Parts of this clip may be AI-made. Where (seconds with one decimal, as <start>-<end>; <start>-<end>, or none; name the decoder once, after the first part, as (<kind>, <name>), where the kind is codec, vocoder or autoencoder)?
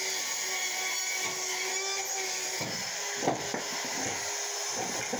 none